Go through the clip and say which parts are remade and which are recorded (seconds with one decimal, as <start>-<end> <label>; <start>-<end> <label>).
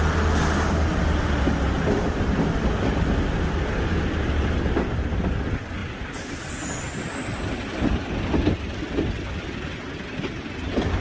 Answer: 0.0-11.0 recorded